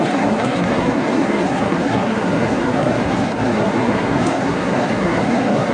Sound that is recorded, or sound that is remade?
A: remade